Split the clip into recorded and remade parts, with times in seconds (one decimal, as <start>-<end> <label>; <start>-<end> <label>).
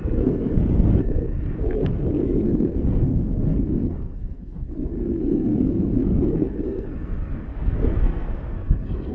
0.0-9.1 remade